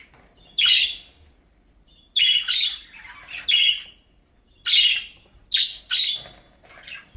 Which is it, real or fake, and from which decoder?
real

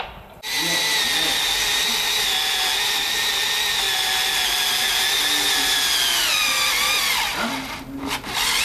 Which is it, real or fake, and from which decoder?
real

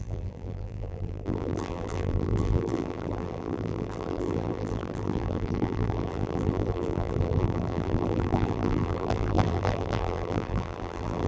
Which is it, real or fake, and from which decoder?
fake, vocoder, BigVGAN v2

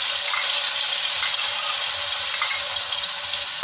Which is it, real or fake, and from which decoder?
real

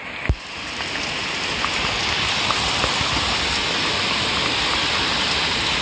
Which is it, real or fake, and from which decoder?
real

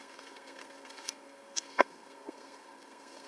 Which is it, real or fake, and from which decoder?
fake, codec, SNAC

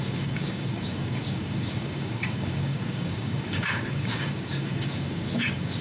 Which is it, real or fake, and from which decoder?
fake, codec, DAC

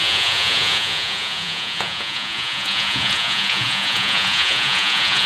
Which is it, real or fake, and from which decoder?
fake, vocoder, Vocos